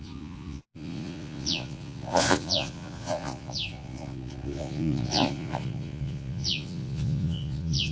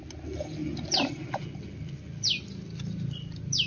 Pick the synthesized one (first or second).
first